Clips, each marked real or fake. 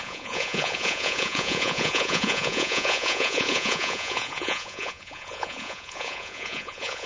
fake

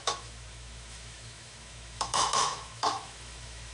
fake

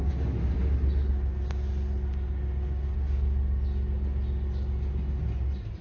real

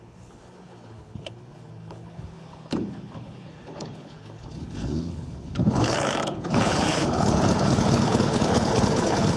fake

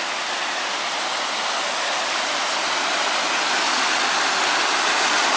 real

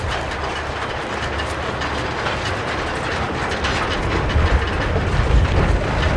real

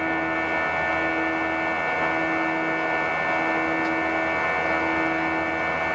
real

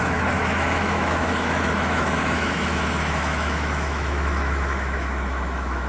fake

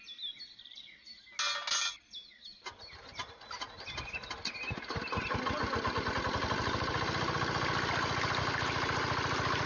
real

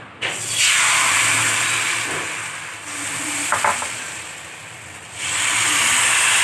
real